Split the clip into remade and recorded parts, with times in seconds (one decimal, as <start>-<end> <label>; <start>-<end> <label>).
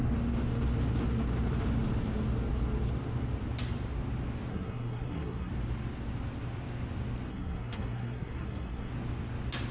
0.0-4.5 recorded; 4.5-5.5 remade; 5.5-7.3 recorded; 7.3-8.9 remade; 8.9-9.7 recorded